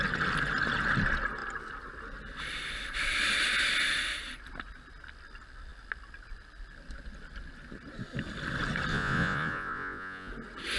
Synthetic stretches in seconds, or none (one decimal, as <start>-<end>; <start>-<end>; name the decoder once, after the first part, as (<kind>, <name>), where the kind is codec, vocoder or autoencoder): 8.9-10.3 (vocoder, Vocos)